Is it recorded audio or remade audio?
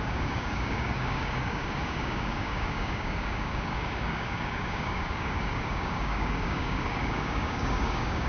remade